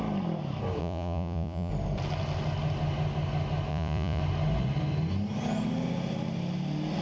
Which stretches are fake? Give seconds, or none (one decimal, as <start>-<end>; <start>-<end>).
0.8-1.7; 3.7-4.2